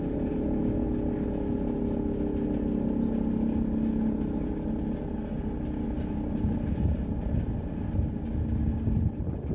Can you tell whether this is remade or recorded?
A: recorded